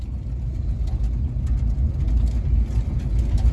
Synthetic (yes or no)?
no